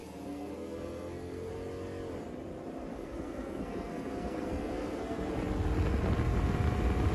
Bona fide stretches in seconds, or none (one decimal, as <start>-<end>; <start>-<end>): 1.5-2.9; 5.3-7.1